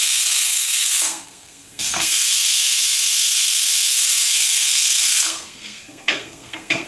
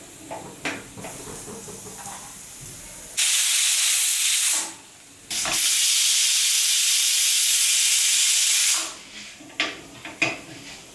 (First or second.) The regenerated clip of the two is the first